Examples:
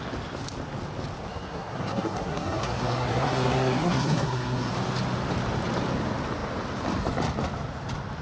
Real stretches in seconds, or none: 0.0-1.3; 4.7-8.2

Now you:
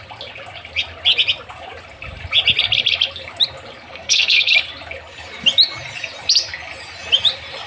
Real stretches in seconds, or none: 0.0-3.9; 4.5-7.7

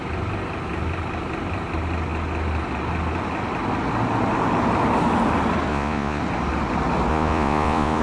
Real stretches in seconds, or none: 0.0-5.7; 6.2-7.1

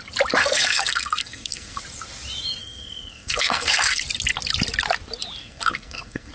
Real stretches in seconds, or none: 0.0-0.4; 1.8-2.6; 4.0-5.4

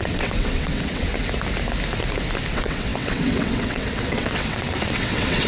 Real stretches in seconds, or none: 1.1-2.5

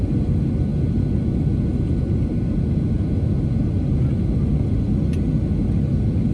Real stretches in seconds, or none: 0.0-6.3

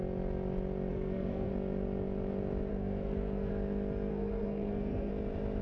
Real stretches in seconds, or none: 0.0-0.9; 1.5-2.7; 3.5-4.1; 5.1-5.6